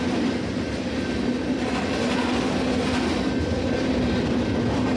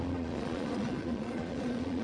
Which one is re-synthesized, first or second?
second